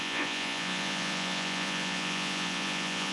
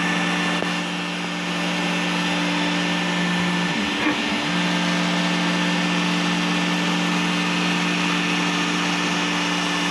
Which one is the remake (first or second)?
first